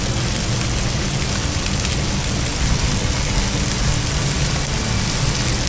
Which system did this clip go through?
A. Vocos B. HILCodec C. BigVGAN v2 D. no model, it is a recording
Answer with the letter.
D